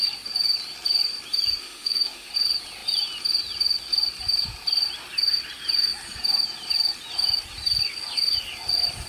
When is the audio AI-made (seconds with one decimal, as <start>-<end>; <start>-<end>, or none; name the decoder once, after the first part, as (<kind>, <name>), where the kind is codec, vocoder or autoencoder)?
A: 1.6-2.3 (autoencoder, DAC-VAE)

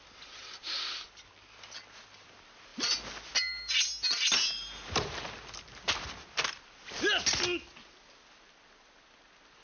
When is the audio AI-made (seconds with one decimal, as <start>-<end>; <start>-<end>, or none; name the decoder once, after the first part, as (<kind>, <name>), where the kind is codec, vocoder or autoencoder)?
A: none

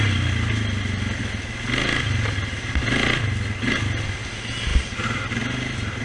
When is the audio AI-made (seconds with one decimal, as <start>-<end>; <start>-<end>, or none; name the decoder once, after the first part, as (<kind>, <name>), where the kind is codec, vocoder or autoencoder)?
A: none

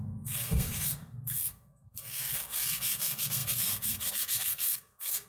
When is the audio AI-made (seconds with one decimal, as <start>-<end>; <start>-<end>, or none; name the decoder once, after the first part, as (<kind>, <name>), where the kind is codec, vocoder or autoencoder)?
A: 0.0-5.3 (codec, SNAC)

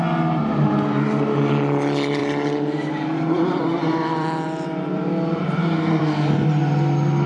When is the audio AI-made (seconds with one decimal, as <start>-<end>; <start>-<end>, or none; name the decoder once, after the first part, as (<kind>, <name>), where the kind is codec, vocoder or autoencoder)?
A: 2.2-6.0 (vocoder, BigVGAN v2)

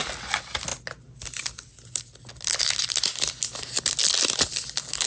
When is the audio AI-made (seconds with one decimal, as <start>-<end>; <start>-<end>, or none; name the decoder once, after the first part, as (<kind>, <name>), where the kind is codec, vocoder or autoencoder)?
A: none